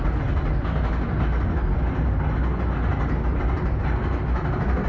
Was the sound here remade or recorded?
recorded